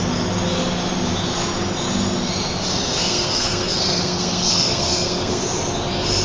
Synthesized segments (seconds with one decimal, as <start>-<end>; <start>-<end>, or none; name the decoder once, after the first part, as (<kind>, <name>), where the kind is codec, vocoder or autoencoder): 2.7-5.6 (codec, SNAC)